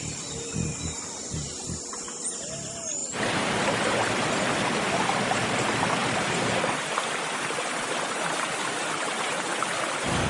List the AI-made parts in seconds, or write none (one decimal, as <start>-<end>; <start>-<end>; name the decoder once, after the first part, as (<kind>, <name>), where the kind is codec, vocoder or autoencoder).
none